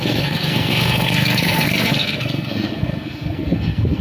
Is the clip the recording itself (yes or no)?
no